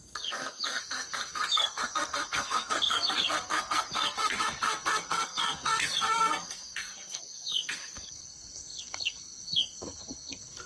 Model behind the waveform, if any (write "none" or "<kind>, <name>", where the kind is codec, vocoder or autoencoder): codec, SNAC